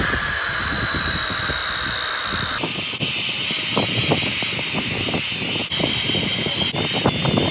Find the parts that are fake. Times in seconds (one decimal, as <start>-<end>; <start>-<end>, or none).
none